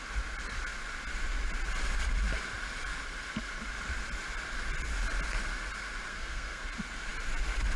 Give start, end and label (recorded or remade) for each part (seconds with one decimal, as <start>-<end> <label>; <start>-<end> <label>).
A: 0.0-6.1 recorded; 6.1-6.6 remade; 6.6-7.8 recorded